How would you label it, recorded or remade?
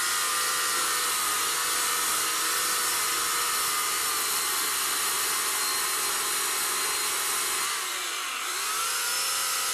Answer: recorded